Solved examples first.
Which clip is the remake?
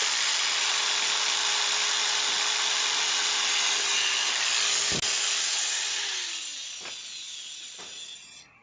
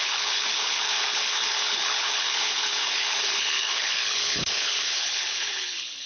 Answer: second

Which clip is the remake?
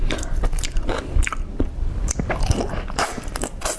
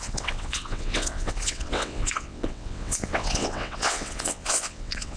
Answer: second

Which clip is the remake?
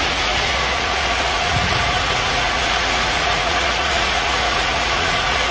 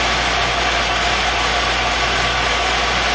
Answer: first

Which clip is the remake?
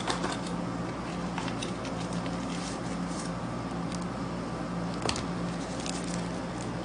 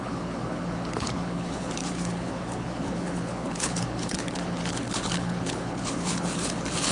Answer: second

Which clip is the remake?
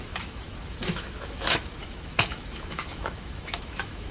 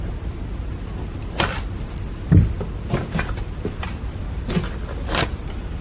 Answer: first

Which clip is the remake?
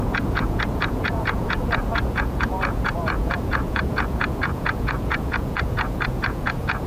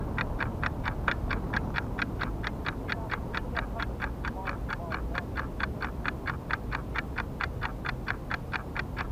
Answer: first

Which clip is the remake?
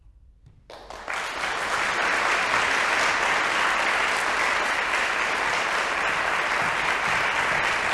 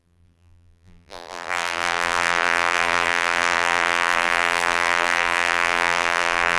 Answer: second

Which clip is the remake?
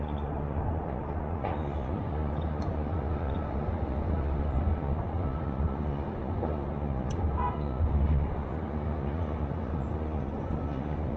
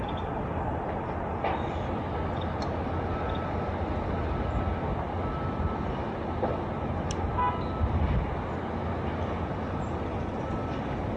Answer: first